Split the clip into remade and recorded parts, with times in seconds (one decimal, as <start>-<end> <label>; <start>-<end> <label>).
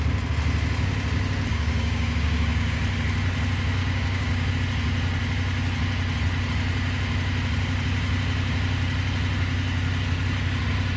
0.0-1.5 recorded; 1.5-2.8 remade; 2.8-3.8 recorded; 3.8-4.5 remade; 4.5-11.0 recorded